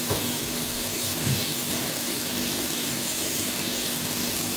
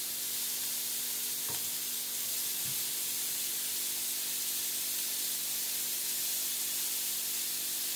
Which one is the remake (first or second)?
first